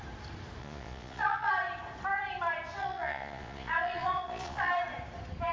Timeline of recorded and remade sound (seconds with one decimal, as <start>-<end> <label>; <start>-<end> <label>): 0.0-0.6 recorded; 0.6-1.5 remade; 1.5-2.8 recorded; 2.8-4.7 remade; 4.7-5.5 recorded